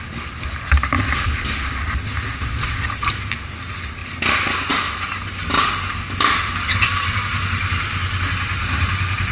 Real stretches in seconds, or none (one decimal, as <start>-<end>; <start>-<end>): 0.0-9.3

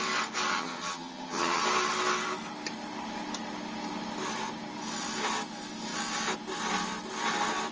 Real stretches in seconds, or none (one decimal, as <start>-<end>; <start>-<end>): 0.0-0.5; 1.6-7.7

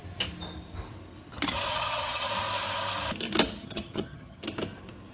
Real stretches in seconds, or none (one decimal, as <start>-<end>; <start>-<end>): 0.0-1.7; 2.3-3.6; 4.4-5.1

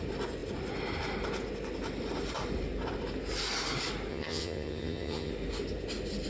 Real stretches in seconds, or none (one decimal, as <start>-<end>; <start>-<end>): 0.0-4.1; 5.3-6.3

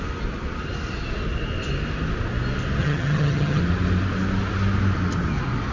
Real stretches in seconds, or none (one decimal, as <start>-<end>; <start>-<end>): 0.0-2.8; 3.6-5.7